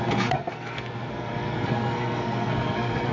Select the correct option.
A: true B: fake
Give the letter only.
B